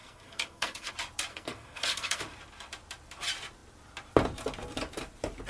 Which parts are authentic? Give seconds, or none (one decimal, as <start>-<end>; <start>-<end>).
0.9-1.3; 2.2-5.5